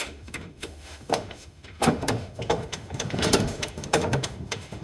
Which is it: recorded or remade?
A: remade